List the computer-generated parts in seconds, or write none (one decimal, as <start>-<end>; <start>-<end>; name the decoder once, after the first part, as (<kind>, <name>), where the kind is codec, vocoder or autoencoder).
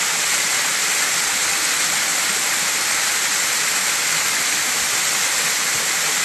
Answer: none